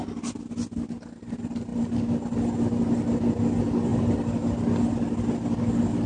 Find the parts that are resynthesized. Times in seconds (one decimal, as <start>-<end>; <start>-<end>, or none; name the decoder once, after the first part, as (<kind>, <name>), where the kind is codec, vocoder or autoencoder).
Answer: none